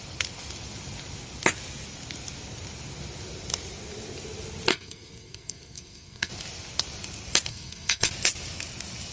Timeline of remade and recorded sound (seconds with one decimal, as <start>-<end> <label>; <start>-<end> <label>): 0.0-4.7 recorded; 4.7-6.3 remade; 6.3-7.5 recorded; 7.5-8.1 remade; 8.1-9.1 recorded